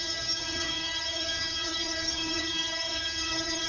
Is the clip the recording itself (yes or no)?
no